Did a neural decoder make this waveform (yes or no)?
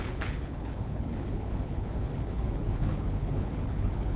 yes